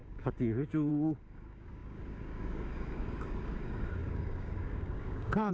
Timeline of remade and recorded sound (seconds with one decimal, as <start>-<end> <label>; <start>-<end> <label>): 0.0-5.5 remade